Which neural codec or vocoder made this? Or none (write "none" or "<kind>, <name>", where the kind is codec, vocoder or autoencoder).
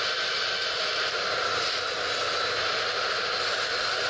none